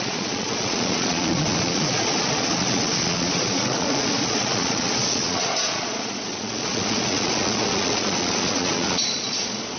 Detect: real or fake fake